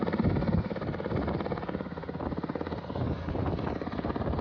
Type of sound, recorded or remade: recorded